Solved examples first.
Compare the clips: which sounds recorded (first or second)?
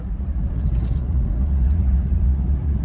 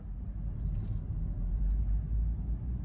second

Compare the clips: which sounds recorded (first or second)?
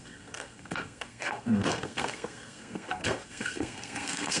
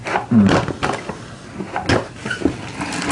second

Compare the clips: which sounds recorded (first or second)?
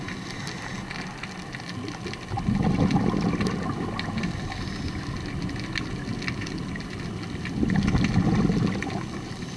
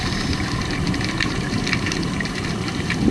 first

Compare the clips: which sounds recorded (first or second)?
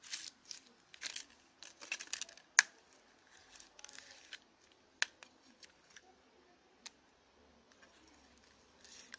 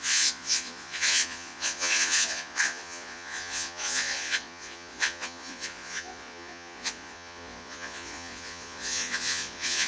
first